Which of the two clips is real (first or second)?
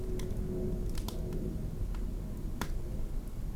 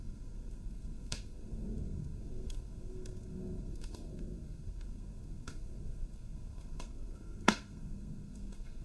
first